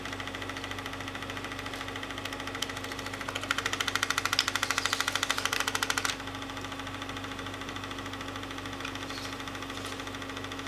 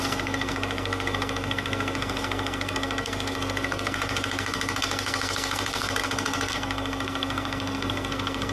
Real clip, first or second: first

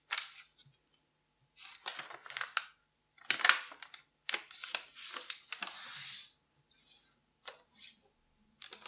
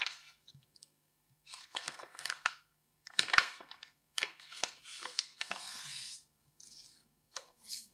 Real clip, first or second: first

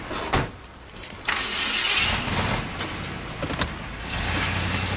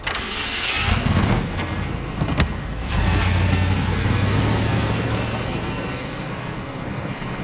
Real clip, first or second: first